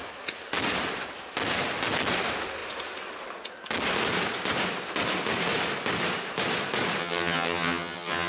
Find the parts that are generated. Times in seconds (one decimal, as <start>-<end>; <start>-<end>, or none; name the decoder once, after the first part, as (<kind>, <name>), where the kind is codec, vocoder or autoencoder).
7.0-8.3 (vocoder, HiFi-GAN)